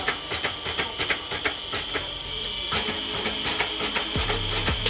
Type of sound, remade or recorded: recorded